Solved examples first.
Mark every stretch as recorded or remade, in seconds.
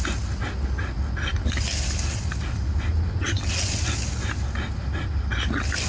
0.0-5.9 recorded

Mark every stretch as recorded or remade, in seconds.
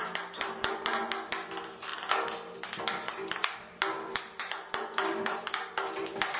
0.0-6.4 recorded